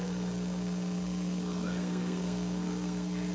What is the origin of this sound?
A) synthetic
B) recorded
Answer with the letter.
A